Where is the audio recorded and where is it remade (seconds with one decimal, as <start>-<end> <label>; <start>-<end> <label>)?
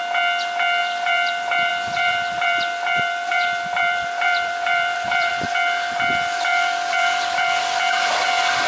0.0-0.8 recorded; 0.8-5.3 remade; 5.3-6.5 recorded; 6.5-7.6 remade; 7.6-8.7 recorded